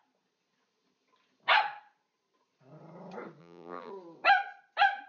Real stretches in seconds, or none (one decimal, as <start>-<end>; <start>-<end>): 0.0-3.4; 3.9-5.1